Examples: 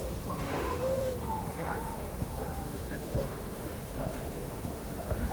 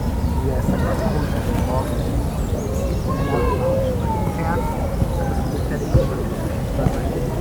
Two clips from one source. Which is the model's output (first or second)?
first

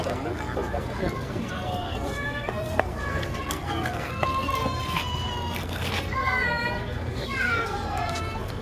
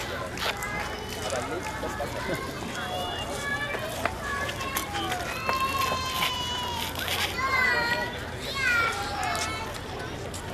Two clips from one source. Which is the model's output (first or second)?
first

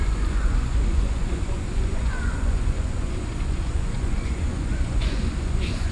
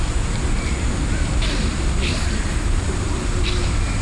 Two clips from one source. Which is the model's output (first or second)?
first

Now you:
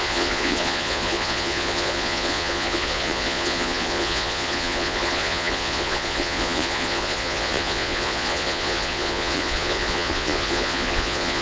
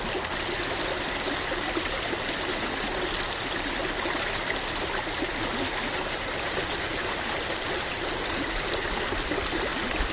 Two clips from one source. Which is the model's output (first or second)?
first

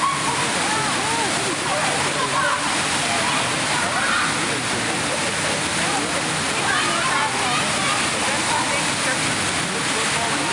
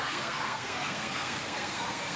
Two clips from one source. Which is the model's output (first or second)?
second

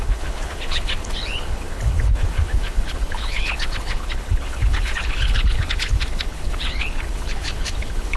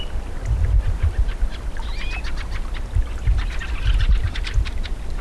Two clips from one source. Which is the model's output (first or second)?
first